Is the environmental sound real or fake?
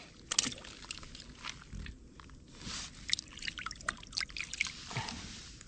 real